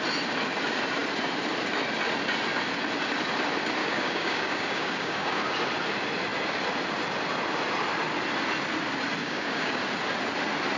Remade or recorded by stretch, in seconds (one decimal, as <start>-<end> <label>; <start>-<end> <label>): 0.0-3.8 recorded; 3.8-5.4 remade; 5.4-9.2 recorded; 9.2-9.8 remade; 9.8-10.8 recorded